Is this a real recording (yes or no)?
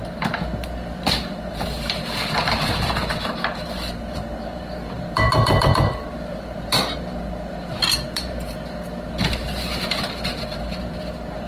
no